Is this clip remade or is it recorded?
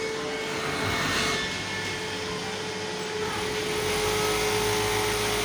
recorded